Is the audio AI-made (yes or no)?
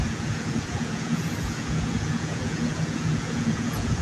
yes